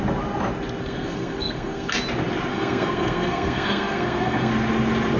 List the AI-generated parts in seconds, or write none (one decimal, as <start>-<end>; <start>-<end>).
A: 0.8-1.9; 2.5-4.5